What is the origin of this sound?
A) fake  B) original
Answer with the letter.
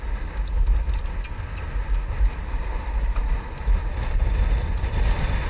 B